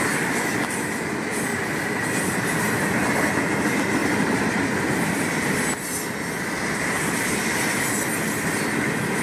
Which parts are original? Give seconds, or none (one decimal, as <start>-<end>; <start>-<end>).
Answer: 0.0-9.2